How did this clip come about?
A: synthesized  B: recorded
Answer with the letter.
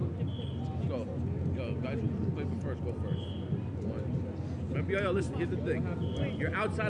B